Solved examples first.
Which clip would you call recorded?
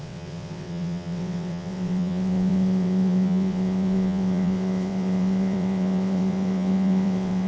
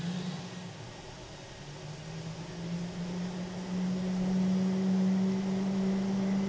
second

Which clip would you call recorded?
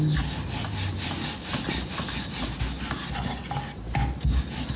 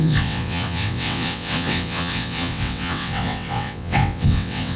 first